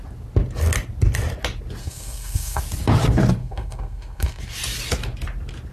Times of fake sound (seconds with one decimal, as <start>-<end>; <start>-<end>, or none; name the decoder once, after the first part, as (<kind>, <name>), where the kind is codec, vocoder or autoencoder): 1.8-2.6 (codec, SNAC); 3.4-4.4